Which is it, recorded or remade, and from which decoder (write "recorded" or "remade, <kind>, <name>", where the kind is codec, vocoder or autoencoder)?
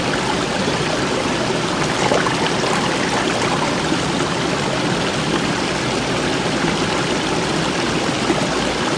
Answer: recorded